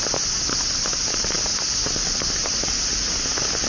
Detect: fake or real real